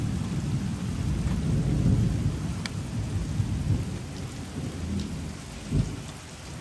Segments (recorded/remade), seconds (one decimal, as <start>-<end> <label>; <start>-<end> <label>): 0.0-6.6 recorded